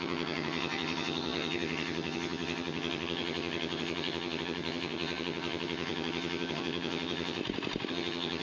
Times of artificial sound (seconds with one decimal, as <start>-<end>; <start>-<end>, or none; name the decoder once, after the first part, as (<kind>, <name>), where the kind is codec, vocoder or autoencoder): 0.0-7.4 (vocoder, HiFi-GAN); 7.9-8.4